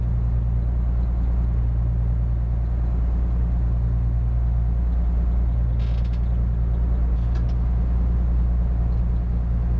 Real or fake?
real